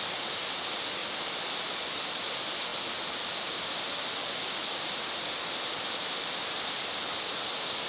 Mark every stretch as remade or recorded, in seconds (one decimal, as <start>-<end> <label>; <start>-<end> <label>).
0.0-7.9 recorded